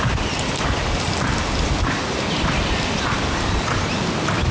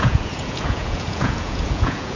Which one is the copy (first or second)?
second